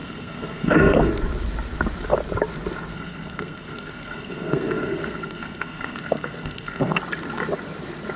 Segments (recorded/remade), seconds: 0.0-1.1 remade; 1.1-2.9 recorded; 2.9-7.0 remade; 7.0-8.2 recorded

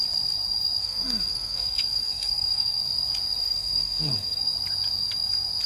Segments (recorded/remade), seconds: 0.0-0.8 recorded; 0.8-2.8 remade; 2.8-3.4 recorded; 3.4-4.4 remade; 4.4-5.7 recorded

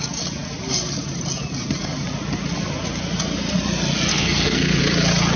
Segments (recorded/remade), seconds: 0.0-4.1 recorded; 4.1-4.8 remade; 4.8-5.4 recorded

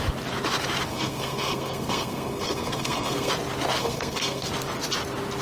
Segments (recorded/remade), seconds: 0.0-0.9 recorded; 0.9-3.3 remade; 3.3-3.8 recorded; 3.8-4.5 remade; 4.5-5.4 recorded